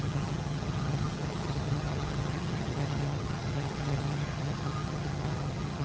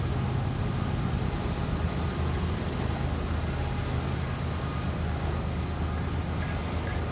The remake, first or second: first